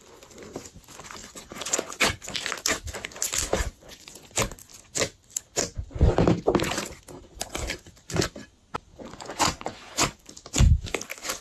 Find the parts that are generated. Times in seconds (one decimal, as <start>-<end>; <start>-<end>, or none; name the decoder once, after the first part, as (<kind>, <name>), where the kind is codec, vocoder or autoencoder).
1.2-2.0 (vocoder, Vocos); 3.6-4.3; 8.9-10.3